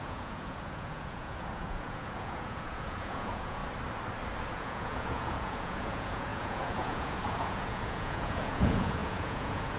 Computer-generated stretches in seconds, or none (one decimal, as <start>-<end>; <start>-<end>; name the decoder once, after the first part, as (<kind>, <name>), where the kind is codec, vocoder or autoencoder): 0.0-3.6 (vocoder, Vocos); 4.5-9.8